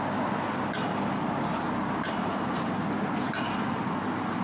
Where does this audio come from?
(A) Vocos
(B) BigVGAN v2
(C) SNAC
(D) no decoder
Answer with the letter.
D